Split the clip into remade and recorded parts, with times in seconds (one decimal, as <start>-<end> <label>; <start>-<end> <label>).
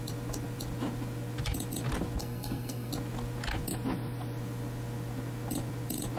0.0-2.2 recorded; 2.2-2.9 remade; 2.9-6.2 recorded